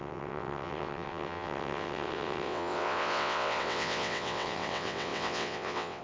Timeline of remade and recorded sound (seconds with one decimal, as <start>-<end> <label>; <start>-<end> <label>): 0.0-6.0 remade